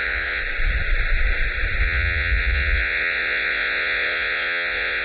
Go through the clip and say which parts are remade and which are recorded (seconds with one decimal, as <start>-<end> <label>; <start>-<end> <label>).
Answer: 0.0-0.4 remade; 0.4-1.8 recorded; 1.8-5.0 remade